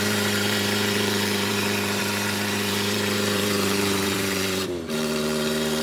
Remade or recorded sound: remade